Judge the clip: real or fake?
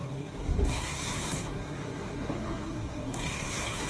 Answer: fake